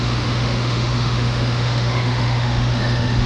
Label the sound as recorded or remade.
remade